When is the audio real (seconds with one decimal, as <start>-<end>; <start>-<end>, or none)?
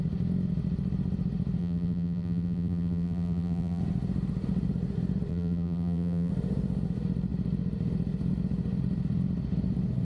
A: 0.0-1.6; 3.8-5.3; 6.3-10.0